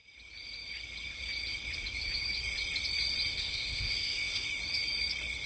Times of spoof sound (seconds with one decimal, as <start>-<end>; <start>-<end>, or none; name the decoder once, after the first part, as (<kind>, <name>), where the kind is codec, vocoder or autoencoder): 3.3-4.5 (codec, ZipCodec)